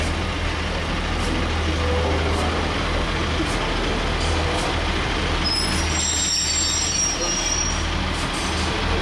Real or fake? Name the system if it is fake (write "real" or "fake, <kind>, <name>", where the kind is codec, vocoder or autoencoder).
real